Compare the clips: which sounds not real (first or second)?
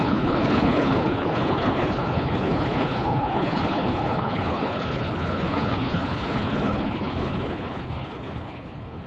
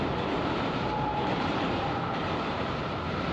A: first